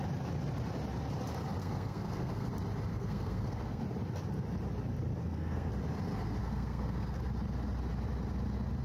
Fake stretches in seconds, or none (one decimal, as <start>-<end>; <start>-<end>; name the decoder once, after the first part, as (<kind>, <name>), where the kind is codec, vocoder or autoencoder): 1.6-2.5 (codec, SNAC); 2.9-3.8; 5.2-5.7; 6.4-7.2